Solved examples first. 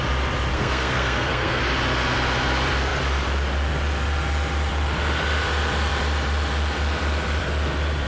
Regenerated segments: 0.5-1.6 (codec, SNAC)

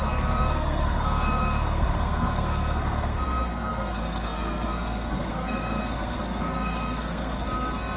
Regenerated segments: 0.0-8.0 (codec, SNAC)

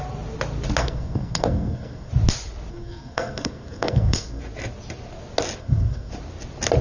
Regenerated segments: 0.8-2.1 (codec, SNAC); 2.7-4.4; 5.6-6.1

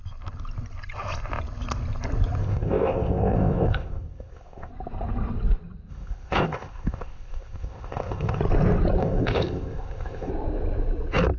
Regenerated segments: 2.4-4.7 (codec, ZipCodec); 5.9-8.4; 9.0-10.3

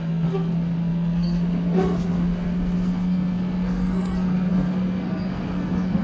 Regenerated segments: 0.0-6.0 (codec, SNAC)

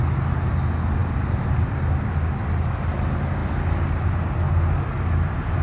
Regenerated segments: none